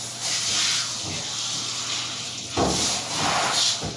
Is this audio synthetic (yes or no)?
no